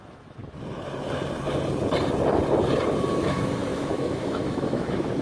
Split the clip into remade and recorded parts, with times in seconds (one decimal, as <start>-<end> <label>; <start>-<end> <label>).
0.0-0.4 remade; 0.4-3.1 recorded; 3.1-5.2 remade